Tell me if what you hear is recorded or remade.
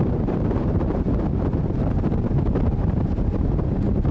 remade